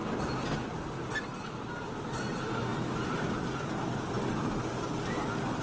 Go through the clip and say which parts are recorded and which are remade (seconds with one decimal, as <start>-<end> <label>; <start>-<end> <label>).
0.0-5.6 recorded